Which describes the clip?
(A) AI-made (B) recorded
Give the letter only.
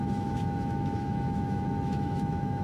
A